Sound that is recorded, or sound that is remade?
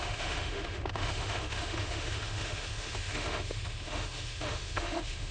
remade